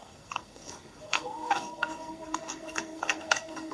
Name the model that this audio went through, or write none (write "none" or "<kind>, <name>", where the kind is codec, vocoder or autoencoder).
codec, SNAC